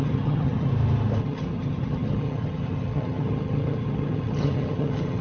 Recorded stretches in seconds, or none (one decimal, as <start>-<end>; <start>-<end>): 0.7-1.2